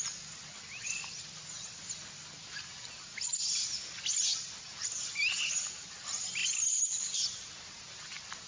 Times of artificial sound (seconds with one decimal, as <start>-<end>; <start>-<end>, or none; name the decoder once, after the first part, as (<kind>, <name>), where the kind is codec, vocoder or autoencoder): none